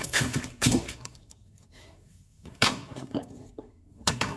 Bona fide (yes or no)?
no